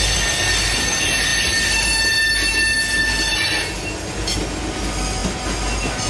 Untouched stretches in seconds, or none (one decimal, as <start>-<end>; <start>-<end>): 0.0-6.1